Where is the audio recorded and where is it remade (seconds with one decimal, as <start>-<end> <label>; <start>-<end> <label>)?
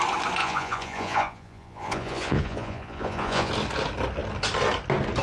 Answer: 0.0-0.4 recorded; 0.4-3.5 remade; 3.5-5.2 recorded